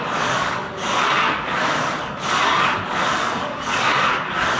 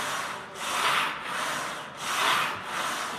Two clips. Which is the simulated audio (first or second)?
first